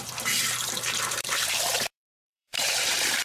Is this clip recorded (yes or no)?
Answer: no